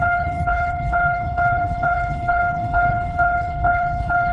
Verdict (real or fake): fake